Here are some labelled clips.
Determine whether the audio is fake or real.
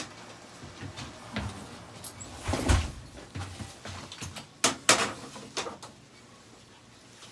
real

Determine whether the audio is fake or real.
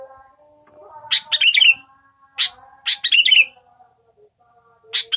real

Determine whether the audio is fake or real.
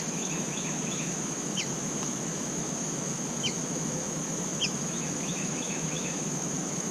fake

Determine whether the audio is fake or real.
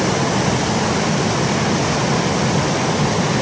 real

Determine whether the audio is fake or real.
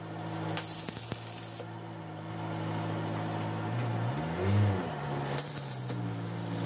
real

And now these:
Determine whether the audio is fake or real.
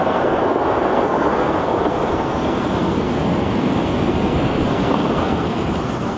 fake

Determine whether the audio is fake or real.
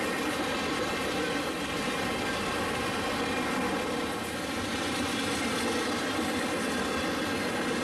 real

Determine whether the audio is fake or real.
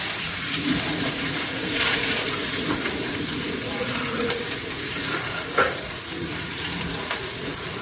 fake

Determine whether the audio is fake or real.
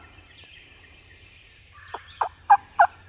fake